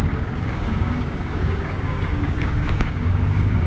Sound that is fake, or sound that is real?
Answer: fake